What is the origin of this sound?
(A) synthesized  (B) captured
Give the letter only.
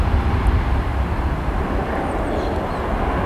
B